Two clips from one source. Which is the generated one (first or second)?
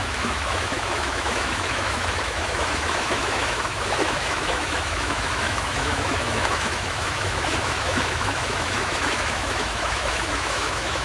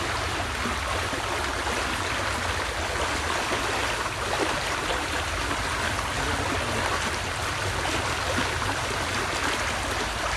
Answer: first